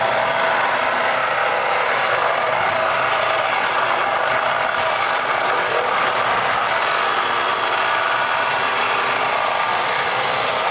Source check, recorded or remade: recorded